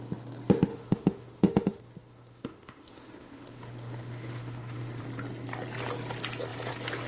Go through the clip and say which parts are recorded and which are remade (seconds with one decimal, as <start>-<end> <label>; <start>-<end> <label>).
0.0-0.7 recorded; 0.7-5.0 remade; 5.0-7.1 recorded